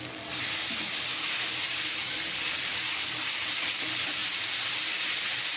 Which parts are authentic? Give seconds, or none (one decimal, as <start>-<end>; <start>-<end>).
0.0-5.6